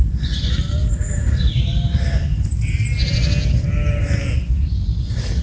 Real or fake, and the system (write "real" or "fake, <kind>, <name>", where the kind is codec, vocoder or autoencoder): real